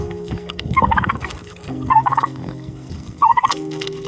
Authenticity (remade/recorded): remade